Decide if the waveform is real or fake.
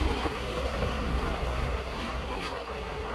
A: fake